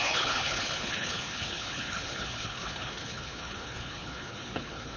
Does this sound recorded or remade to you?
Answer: remade